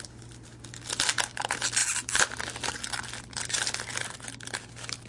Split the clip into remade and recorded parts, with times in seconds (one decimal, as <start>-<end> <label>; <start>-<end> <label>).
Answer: 0.0-5.1 recorded